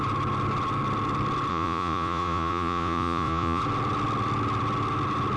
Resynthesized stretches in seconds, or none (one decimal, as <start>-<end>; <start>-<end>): 1.5-3.6